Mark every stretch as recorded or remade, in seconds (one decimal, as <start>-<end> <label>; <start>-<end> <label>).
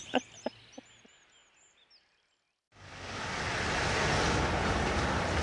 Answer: 0.0-5.4 recorded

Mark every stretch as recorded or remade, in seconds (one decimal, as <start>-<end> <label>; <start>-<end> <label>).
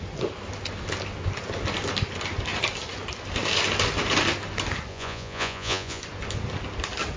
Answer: 0.0-4.9 recorded; 4.9-6.0 remade; 6.0-7.2 recorded